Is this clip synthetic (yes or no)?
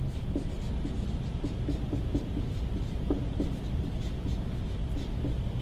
no